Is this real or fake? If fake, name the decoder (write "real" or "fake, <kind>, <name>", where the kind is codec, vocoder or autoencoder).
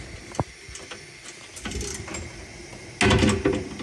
real